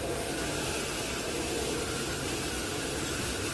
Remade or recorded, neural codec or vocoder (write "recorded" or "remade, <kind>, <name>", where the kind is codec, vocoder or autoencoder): recorded